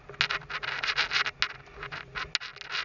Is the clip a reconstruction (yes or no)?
no